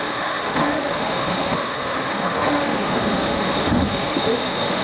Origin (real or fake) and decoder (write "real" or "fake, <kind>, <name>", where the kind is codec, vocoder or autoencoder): fake, autoencoder, DAC-VAE